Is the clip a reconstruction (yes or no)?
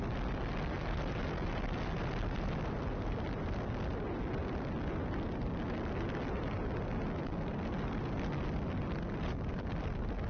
no